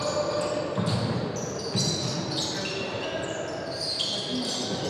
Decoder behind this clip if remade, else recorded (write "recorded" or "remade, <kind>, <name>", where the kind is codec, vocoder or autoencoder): recorded